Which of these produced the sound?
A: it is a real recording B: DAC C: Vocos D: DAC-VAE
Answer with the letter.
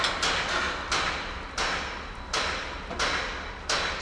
A